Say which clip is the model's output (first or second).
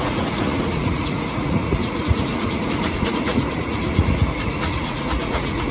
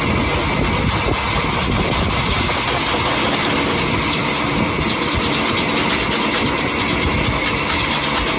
first